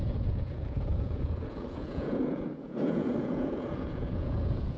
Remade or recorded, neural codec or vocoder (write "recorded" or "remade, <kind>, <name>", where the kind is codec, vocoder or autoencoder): remade, vocoder, Vocos